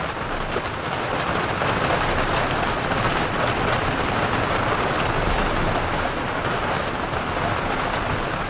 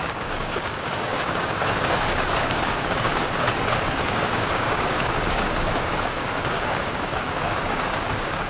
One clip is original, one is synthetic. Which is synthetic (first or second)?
second